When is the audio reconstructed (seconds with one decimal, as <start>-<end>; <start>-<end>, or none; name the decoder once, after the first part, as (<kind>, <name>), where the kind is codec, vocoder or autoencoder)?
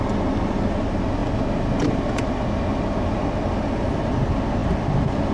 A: none